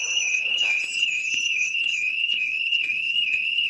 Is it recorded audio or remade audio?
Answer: remade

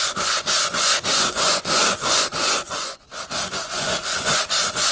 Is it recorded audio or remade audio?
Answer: remade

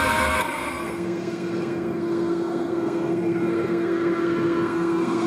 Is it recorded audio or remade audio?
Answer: remade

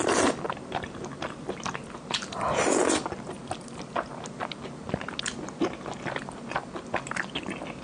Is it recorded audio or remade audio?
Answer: recorded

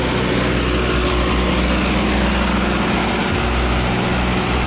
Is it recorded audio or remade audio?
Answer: recorded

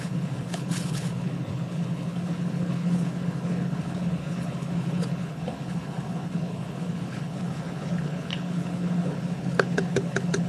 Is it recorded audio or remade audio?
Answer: remade